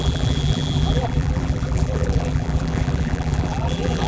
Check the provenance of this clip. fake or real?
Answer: fake